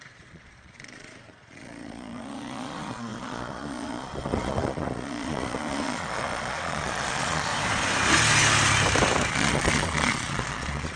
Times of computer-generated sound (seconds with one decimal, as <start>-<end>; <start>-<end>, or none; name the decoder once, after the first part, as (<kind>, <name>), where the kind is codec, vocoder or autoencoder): 0.0-7.5 (vocoder, Vocos); 9.3-11.0

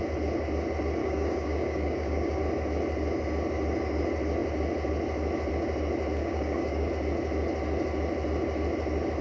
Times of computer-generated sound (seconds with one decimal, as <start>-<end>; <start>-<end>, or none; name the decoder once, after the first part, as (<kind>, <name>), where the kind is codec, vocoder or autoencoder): 1.0-2.4 (codec, DAC); 6.2-6.9

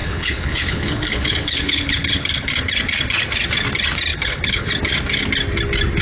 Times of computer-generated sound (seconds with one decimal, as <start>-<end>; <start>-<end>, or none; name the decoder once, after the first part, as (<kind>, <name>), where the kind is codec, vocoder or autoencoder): 0.0-2.5 (codec, HILCodec); 4.1-4.7

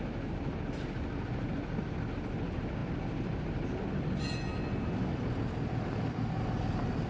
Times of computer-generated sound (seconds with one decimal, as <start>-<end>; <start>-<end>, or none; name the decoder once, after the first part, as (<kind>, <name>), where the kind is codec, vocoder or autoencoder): none

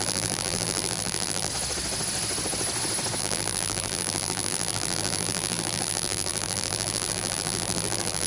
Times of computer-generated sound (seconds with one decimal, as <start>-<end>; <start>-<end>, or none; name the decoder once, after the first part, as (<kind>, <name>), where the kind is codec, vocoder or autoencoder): 0.0-1.5 (vocoder, BigVGAN v2); 3.2-8.3

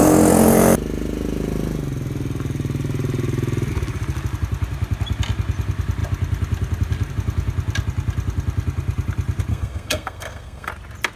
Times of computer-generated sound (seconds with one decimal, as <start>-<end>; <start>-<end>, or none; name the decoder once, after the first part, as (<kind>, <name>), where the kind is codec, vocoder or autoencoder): 9.5-10.7 (codec, SNAC)

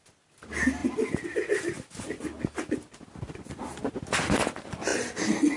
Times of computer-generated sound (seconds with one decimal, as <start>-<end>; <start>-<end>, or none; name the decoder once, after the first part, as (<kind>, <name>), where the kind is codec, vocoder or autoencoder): none

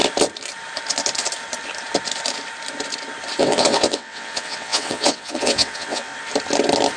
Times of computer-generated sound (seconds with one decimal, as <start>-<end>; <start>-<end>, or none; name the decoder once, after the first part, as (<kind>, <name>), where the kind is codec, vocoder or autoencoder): 3.4-6.1 (vocoder, WaveNeXt)